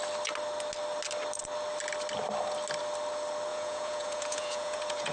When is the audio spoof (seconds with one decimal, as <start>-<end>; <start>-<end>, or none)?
3.5-5.1